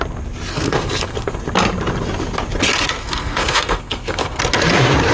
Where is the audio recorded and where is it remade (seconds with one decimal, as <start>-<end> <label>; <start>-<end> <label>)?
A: 0.0-0.5 recorded; 0.5-1.4 remade; 1.4-3.0 recorded; 3.0-4.4 remade; 4.4-5.1 recorded